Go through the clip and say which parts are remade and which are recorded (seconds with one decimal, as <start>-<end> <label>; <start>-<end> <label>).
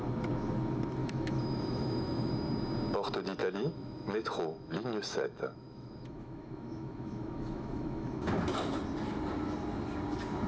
0.0-1.0 recorded; 1.0-2.3 remade; 2.3-3.4 recorded; 3.4-8.4 remade; 8.4-10.5 recorded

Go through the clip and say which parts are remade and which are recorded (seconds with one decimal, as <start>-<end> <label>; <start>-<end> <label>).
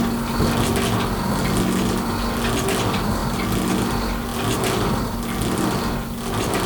0.0-6.7 recorded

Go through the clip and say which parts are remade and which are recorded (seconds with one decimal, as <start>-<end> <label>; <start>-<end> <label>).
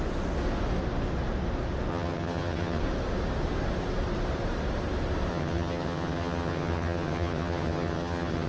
0.0-1.9 recorded; 1.9-2.8 remade; 2.8-5.3 recorded; 5.3-8.5 remade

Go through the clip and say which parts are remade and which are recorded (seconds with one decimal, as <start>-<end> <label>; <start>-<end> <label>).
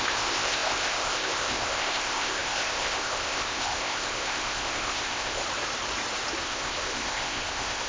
0.0-5.4 remade; 5.4-6.4 recorded; 6.4-7.9 remade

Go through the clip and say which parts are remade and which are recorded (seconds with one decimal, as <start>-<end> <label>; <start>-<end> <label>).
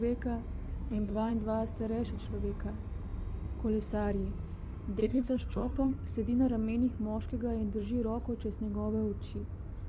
0.0-0.7 recorded; 0.7-1.3 remade; 1.3-5.0 recorded; 5.0-5.9 remade; 5.9-9.9 recorded